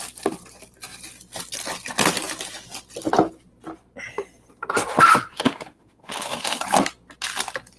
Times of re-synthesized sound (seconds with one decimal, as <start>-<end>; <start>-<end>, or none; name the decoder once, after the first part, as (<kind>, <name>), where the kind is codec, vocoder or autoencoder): 5.3-6.6 (autoencoder, DAC-VAE)